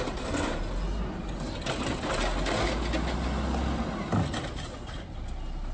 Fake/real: real